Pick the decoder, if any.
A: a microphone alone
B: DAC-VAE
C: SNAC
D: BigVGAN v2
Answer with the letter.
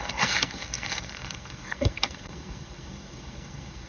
C